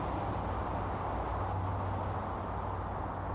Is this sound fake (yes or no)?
no